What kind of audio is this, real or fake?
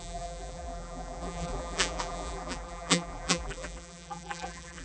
fake